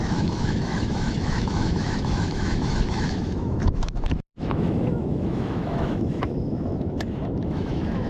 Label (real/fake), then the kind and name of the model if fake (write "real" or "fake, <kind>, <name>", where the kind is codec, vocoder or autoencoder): fake, autoencoder, DAC-VAE